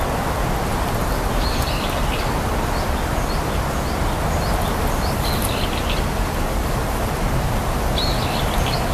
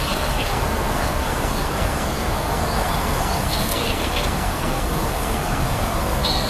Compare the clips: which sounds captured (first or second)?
first